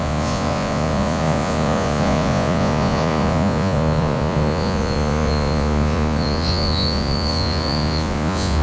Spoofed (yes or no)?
yes